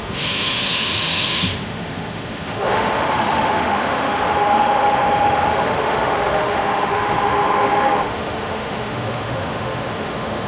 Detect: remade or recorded remade